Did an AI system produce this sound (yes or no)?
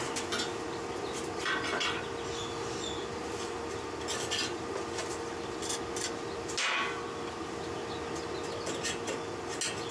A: no